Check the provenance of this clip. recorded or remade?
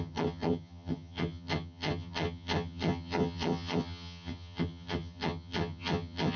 remade